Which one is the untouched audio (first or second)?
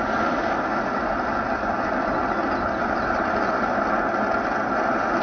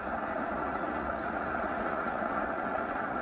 first